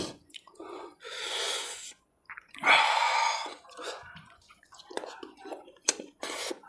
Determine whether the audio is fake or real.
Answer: fake